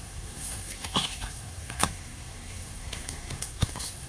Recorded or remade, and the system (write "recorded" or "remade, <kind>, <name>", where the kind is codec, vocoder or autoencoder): remade, codec, SNAC